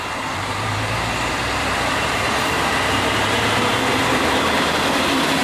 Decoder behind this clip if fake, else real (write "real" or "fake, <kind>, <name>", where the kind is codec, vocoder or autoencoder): fake, vocoder, BigVGAN v2